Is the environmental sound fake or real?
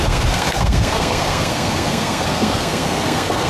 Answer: fake